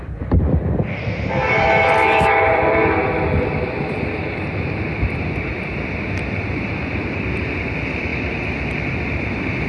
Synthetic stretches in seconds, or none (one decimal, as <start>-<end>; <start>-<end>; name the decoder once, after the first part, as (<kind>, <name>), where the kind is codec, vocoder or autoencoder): 0.0-8.1 (vocoder, BigVGAN v2); 8.7-9.7